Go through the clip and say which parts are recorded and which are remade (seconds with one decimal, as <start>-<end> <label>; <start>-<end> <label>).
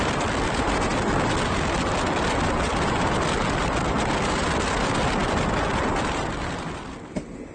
0.0-7.5 recorded